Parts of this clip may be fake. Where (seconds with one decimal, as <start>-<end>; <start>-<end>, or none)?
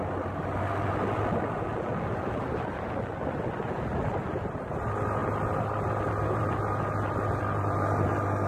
none